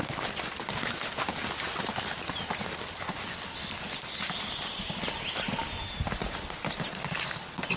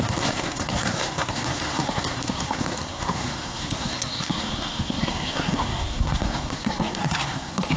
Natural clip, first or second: first